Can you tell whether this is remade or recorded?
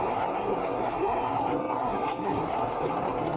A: remade